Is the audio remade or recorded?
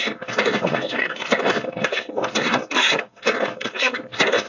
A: remade